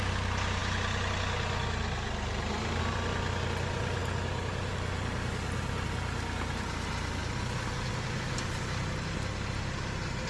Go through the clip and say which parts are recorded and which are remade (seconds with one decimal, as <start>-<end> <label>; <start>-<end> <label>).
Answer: 0.0-10.3 recorded